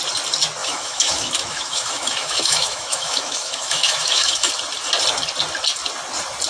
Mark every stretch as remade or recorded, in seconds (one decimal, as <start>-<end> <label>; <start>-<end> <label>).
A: 0.0-0.6 recorded; 0.6-4.5 remade; 4.5-6.5 recorded